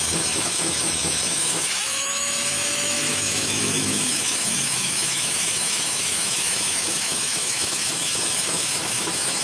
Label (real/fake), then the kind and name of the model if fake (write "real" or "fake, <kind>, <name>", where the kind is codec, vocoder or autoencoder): fake, autoencoder, DAC-VAE